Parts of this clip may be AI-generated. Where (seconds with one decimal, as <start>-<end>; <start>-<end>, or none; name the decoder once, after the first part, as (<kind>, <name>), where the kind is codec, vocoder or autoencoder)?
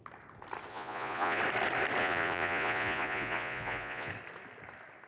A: 0.7-1.4 (vocoder, Vocos); 2.0-4.1